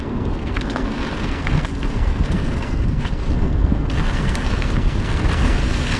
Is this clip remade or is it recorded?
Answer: remade